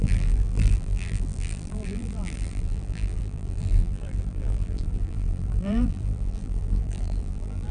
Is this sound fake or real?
fake